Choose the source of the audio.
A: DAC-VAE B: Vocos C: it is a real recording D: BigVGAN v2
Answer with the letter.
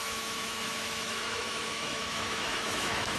A